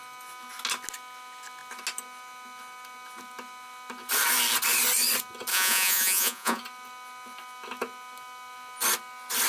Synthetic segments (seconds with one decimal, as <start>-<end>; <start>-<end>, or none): 5.5-6.6